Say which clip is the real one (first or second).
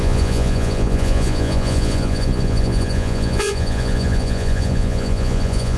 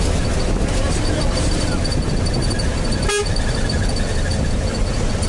second